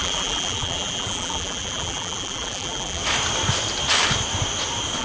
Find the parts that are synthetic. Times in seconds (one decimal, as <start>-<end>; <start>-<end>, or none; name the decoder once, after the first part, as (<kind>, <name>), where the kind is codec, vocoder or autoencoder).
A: 0.0-3.0 (vocoder, BigVGAN v2)